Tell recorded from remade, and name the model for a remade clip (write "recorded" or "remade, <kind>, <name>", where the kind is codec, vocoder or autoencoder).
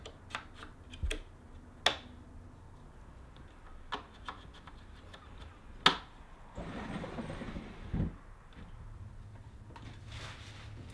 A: recorded